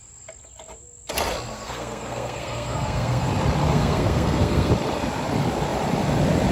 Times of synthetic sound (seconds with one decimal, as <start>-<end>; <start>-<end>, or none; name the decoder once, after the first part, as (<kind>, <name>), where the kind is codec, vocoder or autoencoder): 1.5-3.3 (codec, SNAC); 3.7-4.7